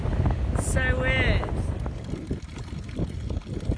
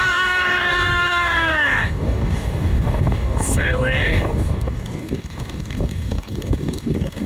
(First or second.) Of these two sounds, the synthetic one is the second